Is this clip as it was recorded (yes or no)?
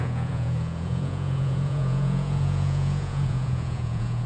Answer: no